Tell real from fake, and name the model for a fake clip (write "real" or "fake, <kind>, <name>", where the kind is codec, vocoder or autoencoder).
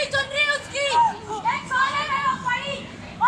real